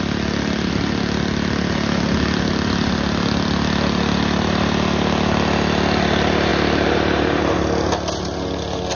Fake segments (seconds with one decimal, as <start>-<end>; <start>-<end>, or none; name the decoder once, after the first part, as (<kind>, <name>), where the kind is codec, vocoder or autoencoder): 6.5-7.4 (vocoder, BigVGAN v2)